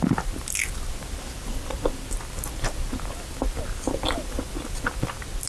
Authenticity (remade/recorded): recorded